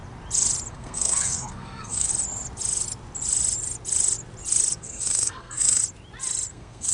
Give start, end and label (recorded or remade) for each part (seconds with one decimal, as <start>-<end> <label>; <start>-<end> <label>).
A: 0.0-0.7 recorded; 0.7-2.1 remade; 2.1-4.8 recorded; 4.8-5.8 remade; 5.8-6.5 recorded; 6.5-6.9 remade